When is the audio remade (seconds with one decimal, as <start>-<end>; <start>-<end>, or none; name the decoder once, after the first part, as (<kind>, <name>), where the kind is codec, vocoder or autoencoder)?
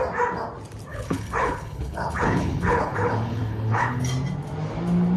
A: 0.9-4.0 (codec, HILCodec)